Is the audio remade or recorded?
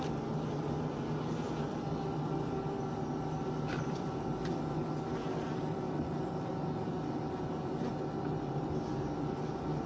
recorded